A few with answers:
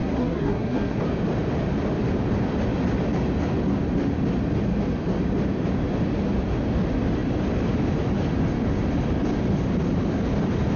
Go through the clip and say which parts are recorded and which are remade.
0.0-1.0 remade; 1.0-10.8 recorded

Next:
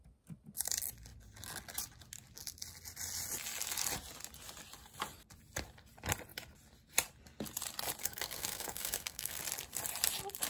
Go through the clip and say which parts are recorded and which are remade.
0.0-8.0 recorded; 8.0-9.4 remade; 9.4-10.5 recorded

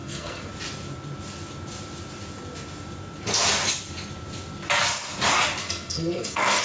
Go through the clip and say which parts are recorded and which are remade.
0.0-0.5 remade; 0.5-5.6 recorded; 5.6-6.6 remade

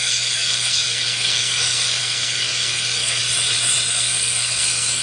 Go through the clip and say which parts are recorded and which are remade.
0.0-3.2 remade; 3.2-3.9 recorded; 3.9-5.0 remade

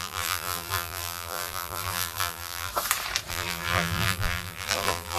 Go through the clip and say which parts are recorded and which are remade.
0.0-2.7 remade; 2.7-3.3 recorded; 3.3-5.2 remade